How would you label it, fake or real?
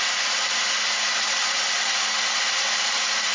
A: real